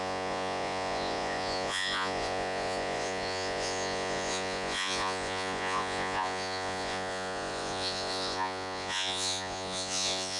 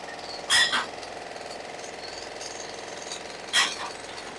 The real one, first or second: second